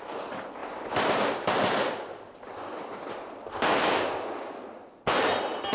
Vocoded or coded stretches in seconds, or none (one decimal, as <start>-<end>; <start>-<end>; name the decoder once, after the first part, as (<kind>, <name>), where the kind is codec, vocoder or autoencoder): none

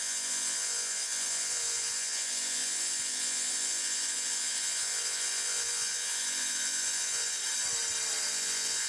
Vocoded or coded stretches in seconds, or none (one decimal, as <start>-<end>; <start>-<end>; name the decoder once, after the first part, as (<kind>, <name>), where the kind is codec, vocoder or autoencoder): 0.0-7.4 (vocoder, Vocos); 8.3-8.9

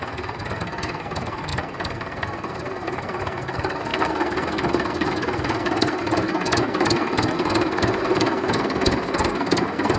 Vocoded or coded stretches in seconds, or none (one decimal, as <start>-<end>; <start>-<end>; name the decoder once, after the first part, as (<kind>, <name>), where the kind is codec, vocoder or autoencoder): 0.0-10.0 (codec, SNAC)

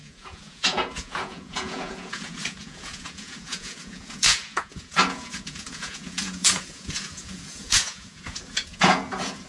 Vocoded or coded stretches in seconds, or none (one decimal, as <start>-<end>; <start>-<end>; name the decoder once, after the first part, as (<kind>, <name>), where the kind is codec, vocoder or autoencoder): 0.0-9.5 (vocoder, Vocos)

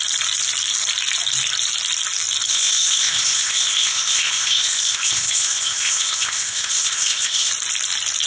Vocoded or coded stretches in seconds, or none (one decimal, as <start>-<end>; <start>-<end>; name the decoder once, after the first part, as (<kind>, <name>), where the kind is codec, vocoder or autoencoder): 2.5-7.5 (codec, ZipCodec)

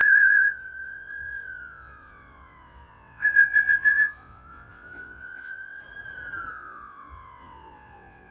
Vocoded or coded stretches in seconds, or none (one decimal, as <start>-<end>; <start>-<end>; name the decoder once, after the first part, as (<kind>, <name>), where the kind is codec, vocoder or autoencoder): 0.0-5.8 (vocoder, WaveNeXt); 6.5-8.3

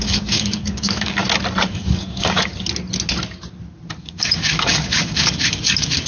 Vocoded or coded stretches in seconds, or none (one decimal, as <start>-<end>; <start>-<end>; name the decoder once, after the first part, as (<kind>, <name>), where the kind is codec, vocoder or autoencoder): 0.0-1.2 (codec, DAC); 1.7-2.5; 4.0-6.1